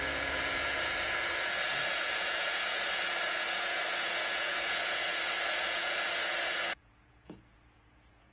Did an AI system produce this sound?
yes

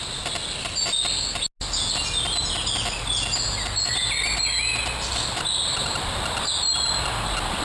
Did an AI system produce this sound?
no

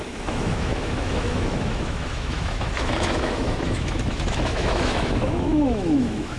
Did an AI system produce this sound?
yes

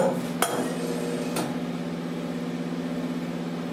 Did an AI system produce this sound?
no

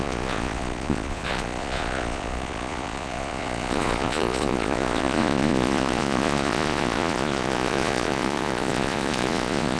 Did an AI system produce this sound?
yes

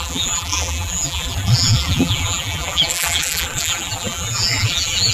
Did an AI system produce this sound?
yes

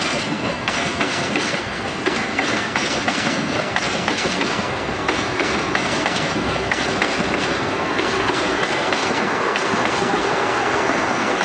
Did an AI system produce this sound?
yes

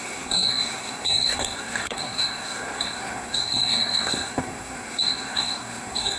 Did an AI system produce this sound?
yes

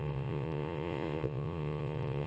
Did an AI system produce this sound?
yes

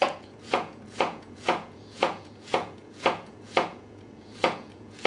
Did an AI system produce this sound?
yes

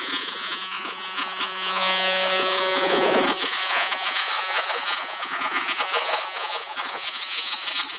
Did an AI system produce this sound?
yes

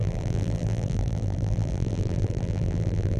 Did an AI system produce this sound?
yes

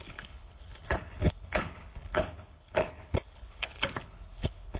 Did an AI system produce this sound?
yes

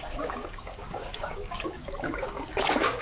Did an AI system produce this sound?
yes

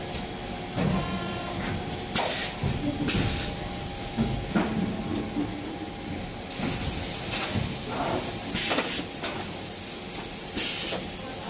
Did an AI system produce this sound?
no